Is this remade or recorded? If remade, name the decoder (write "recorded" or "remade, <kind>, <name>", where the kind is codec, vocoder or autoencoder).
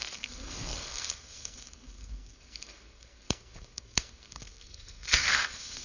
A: remade, codec, SNAC